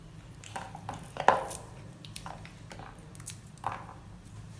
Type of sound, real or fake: real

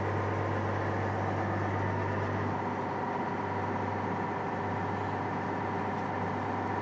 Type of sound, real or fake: real